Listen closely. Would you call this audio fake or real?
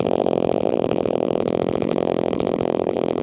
fake